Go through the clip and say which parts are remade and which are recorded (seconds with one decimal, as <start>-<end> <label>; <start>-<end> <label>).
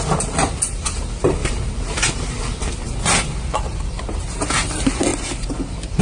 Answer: 0.0-6.0 recorded